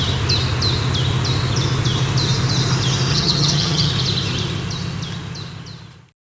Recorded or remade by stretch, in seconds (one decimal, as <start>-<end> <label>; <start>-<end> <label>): 0.0-3.1 recorded; 3.1-3.9 remade; 3.9-6.2 recorded